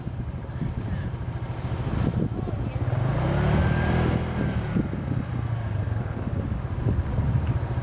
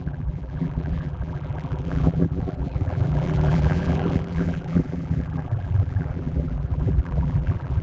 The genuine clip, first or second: first